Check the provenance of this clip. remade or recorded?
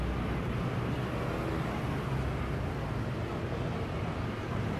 recorded